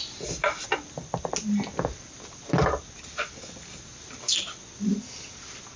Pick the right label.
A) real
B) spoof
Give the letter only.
A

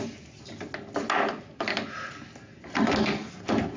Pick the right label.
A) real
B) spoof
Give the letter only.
A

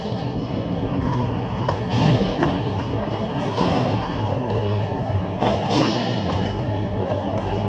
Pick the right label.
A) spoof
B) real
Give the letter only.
A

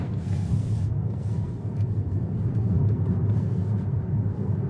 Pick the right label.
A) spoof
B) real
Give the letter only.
A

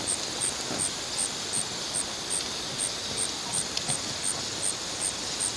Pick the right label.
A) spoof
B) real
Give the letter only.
B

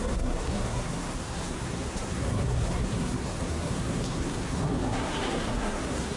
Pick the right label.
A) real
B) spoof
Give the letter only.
B